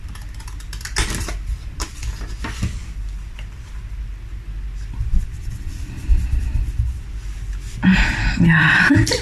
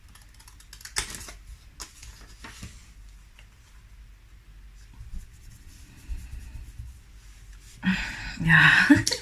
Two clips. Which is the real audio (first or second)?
second